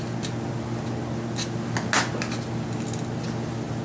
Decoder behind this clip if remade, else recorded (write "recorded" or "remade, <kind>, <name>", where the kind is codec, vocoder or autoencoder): recorded